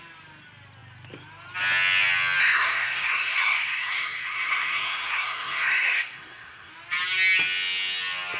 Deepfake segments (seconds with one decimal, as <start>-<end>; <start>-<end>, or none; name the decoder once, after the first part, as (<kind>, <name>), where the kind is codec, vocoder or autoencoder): 2.4-6.7 (codec, SNAC)